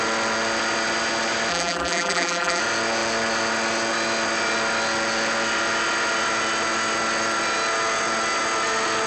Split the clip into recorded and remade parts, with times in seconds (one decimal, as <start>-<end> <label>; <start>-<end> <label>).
0.0-1.5 recorded; 1.5-2.6 remade; 2.6-9.1 recorded